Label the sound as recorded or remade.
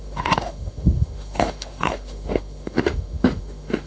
remade